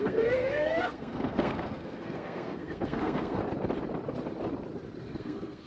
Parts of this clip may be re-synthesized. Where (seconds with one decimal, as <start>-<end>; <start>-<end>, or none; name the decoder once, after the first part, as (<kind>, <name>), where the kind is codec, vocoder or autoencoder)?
0.0-3.4 (codec, SNAC); 5.0-5.7

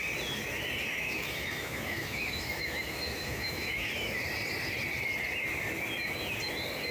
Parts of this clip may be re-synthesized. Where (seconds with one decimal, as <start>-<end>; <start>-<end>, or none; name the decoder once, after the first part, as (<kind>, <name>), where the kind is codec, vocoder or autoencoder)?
1.0-3.9 (autoencoder, DAC-VAE)

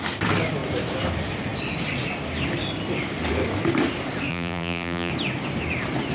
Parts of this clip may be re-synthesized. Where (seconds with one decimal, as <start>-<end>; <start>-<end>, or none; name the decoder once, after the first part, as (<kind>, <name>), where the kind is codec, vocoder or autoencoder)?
4.3-5.1 (vocoder, BigVGAN v2)